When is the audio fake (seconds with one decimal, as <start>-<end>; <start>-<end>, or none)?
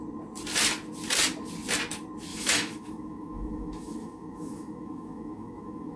2.3-6.0